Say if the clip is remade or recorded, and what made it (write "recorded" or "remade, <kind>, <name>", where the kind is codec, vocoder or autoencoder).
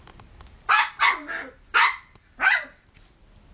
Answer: recorded